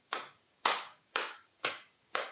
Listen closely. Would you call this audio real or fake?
fake